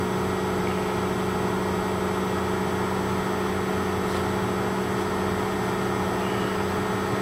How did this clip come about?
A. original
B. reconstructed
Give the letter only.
A